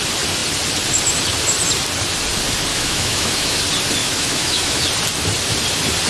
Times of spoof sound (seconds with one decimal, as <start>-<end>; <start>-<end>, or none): 2.7-3.6; 4.0-4.8